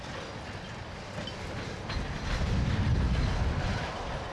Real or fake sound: real